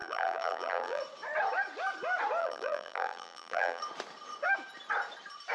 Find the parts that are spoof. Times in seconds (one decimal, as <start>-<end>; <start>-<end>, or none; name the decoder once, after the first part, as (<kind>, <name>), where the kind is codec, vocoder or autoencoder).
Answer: 0.0-1.0 (vocoder, BigVGAN v2); 2.4-3.8